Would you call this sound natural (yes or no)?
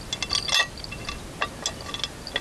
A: yes